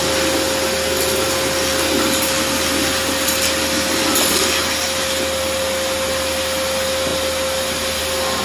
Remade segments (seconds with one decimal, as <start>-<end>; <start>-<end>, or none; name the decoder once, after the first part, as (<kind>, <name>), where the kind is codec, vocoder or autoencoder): none